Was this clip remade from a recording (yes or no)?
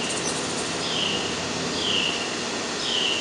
no